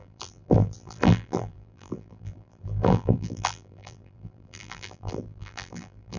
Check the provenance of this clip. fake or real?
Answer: fake